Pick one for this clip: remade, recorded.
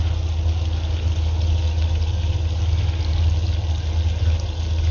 recorded